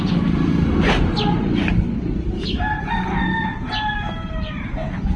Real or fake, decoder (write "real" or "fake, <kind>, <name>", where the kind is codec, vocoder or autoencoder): real